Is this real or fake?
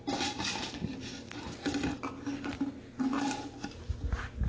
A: real